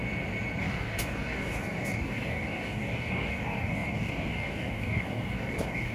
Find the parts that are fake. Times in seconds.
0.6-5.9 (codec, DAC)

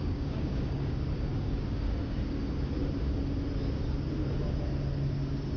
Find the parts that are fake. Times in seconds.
0.0-2.2 (codec, DAC)

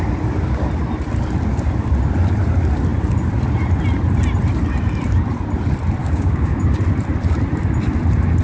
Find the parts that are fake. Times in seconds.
6.0-6.6 (codec, DAC)

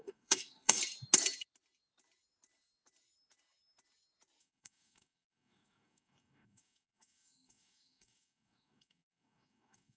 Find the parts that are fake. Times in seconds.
0.0-0.8 (codec, DAC); 4.4-10.0

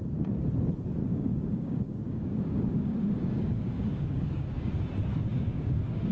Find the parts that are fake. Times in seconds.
1.0-4.7 (codec, DAC); 5.3-6.1

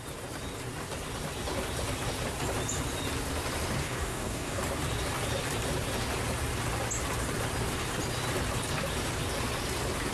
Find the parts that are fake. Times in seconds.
3.8-4.6 (codec, DAC)

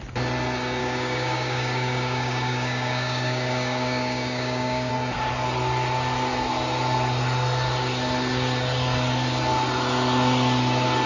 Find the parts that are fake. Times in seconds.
0.8-4.9 (codec, DAC)

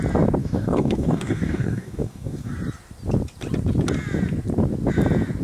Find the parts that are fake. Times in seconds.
0.4-2.5 (codec, DAC)